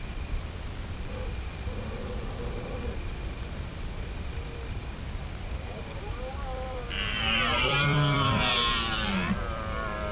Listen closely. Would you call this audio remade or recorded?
remade